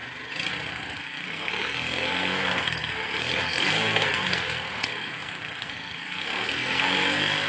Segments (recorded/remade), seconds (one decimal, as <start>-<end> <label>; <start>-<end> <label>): 0.0-0.7 recorded; 0.7-7.5 remade